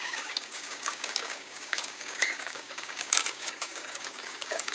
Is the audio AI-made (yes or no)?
yes